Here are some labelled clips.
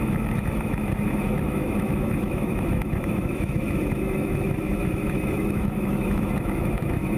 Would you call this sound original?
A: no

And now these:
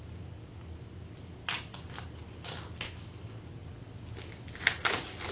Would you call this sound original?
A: yes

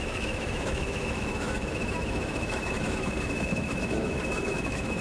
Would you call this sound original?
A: no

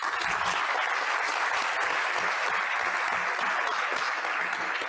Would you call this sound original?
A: yes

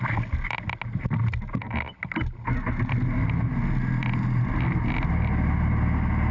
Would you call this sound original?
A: yes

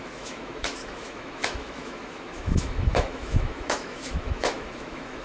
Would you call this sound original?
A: no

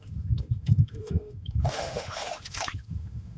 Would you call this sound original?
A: no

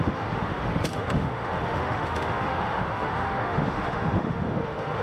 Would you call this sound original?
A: no